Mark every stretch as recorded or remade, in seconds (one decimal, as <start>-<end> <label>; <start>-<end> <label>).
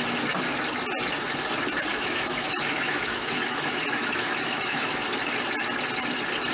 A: 0.0-1.9 recorded; 1.9-4.9 remade; 4.9-6.5 recorded